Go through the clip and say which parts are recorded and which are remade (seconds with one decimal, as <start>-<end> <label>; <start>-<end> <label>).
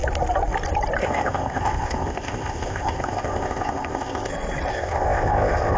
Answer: 0.0-1.0 recorded; 1.0-4.3 remade; 4.3-4.7 recorded; 4.7-5.8 remade